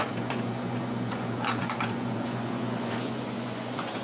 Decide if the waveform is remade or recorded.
remade